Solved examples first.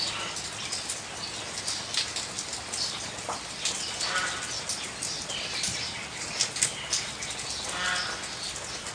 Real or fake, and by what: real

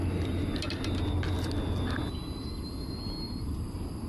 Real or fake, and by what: real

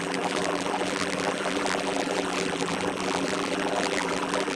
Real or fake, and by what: fake, vocoder, BigVGAN v2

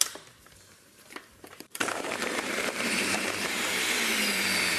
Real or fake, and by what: fake, vocoder, BigVGAN v2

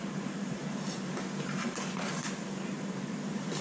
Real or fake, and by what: fake, vocoder, BigVGAN v2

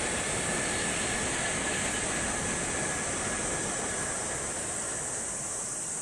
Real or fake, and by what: real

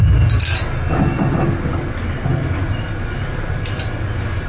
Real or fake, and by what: real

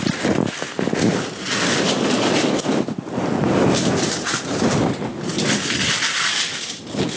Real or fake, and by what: real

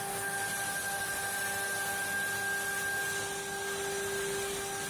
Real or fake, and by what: real